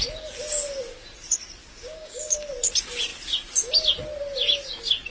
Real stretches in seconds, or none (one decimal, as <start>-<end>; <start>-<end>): 0.0-1.6; 2.5-5.1